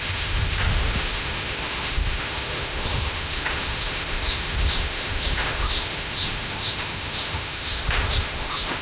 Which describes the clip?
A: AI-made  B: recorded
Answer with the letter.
A